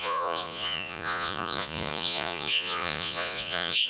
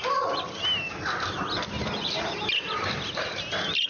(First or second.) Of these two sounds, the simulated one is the first